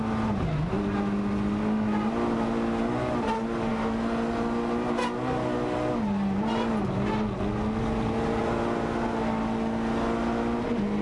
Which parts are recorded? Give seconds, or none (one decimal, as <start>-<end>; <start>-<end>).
0.0-11.0

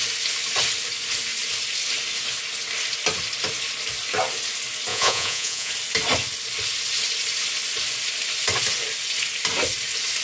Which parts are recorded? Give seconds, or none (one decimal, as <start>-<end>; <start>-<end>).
0.0-4.9; 5.7-10.2

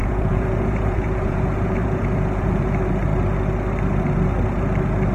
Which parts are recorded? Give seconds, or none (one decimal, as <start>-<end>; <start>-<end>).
2.5-5.1

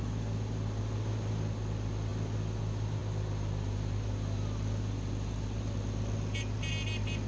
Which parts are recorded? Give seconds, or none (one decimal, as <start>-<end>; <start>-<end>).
0.0-7.3

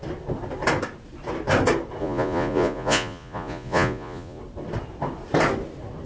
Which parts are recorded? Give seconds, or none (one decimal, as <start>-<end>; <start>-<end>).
0.0-2.0; 4.4-6.1